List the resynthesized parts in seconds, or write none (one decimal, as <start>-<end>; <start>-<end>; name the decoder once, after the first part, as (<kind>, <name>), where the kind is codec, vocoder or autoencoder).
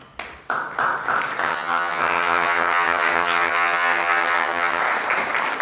1.4-4.8 (vocoder, HiFi-GAN)